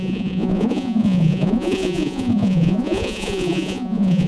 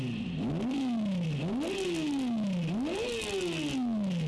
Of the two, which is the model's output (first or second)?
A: first